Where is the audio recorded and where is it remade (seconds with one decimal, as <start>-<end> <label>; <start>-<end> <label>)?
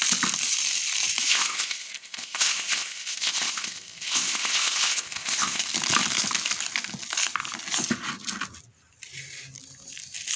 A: 0.0-1.2 recorded; 1.2-5.6 remade; 5.6-10.4 recorded